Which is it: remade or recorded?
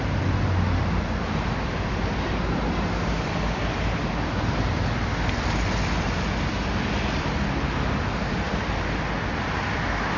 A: remade